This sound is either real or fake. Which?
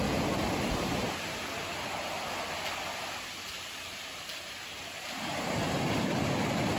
real